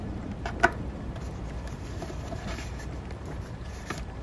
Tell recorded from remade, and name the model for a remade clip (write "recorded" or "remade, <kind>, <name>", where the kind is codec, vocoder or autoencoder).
remade, vocoder, BigVGAN v2